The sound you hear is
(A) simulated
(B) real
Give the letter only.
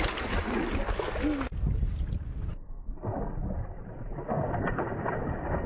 B